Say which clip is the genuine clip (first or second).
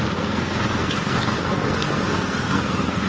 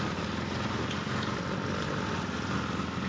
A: second